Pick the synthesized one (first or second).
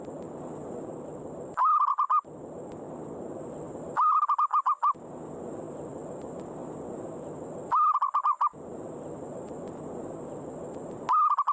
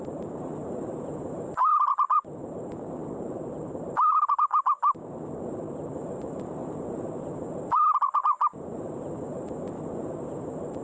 second